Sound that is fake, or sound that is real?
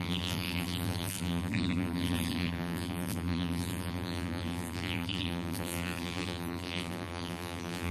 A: fake